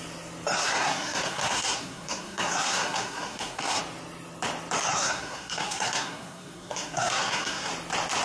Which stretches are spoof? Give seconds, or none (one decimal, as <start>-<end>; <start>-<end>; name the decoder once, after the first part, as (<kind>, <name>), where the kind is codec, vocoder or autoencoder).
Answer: 0.6-3.8 (codec, SNAC); 4.9-7.7